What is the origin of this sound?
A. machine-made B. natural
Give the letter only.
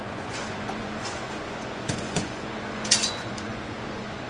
A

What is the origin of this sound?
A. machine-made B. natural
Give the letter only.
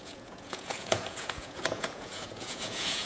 A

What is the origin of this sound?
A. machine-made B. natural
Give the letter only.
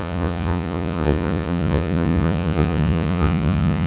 A